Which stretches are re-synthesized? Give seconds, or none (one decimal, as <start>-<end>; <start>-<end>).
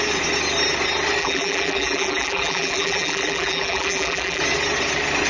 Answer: 1.2-4.4